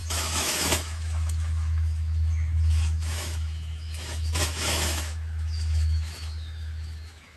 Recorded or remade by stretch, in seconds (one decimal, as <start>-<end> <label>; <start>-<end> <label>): 0.0-7.4 remade